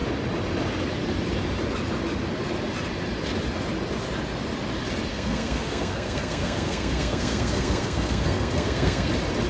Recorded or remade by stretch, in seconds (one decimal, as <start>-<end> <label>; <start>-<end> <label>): 0.0-5.1 recorded; 5.1-9.1 remade; 9.1-9.5 recorded